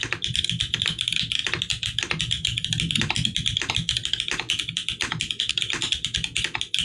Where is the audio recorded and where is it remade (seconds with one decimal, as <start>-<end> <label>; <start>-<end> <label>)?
0.0-1.4 recorded; 1.4-5.5 remade; 5.5-6.8 recorded